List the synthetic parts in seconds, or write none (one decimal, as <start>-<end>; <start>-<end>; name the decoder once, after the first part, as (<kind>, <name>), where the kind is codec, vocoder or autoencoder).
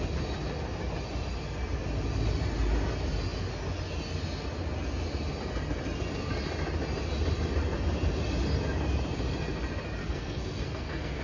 10.0-11.2 (codec, SNAC)